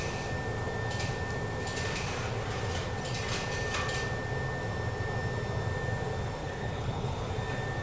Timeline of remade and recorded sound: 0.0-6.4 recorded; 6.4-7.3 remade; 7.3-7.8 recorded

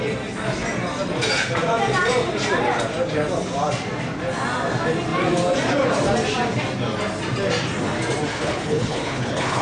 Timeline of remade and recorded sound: 0.0-8.3 recorded; 8.3-9.6 remade

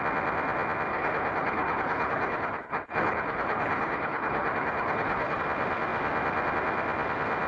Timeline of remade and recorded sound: 0.0-0.9 recorded; 0.9-5.4 remade; 5.4-7.5 recorded

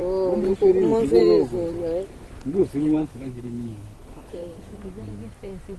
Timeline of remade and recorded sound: 0.0-2.6 recorded; 2.6-4.8 remade; 4.8-5.8 recorded

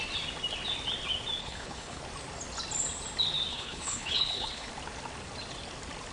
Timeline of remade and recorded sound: 0.0-1.4 recorded; 1.4-2.0 remade; 2.0-3.5 recorded; 3.5-4.7 remade; 4.7-6.1 recorded

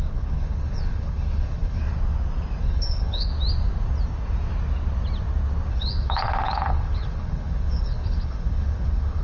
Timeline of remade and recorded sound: 0.0-1.8 remade; 1.8-2.6 recorded; 2.6-3.3 remade; 3.3-5.7 recorded; 5.7-9.2 remade

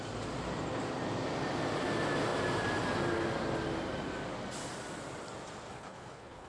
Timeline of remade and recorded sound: 0.0-5.7 recorded; 5.7-6.5 remade